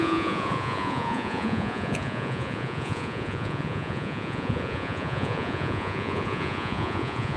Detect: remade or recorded remade